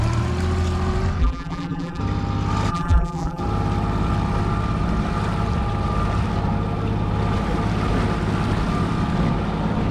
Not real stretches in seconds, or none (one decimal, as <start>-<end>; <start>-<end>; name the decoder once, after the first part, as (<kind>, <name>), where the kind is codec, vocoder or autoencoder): 1.2-2.0 (vocoder, BigVGAN v2); 2.7-3.4